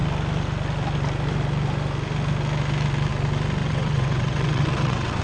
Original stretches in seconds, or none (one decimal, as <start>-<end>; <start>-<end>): 0.0-3.6